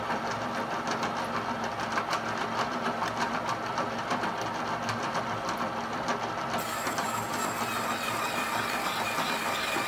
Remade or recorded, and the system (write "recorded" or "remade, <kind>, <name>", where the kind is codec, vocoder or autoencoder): recorded